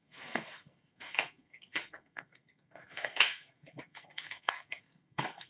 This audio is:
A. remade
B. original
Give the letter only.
A